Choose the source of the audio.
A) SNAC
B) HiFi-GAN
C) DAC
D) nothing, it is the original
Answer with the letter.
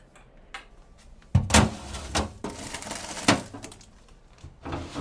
D